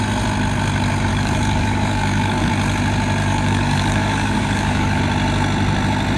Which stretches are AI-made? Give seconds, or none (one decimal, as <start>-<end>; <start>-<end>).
1.1-2.5; 3.2-5.0